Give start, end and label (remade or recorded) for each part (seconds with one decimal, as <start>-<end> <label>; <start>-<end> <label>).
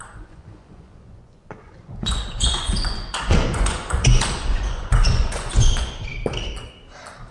0.0-6.1 remade; 6.1-7.3 recorded